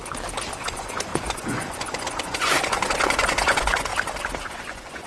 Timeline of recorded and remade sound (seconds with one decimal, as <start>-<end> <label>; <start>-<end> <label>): 0.0-0.6 recorded; 0.6-3.9 remade; 3.9-4.4 recorded; 4.4-5.1 remade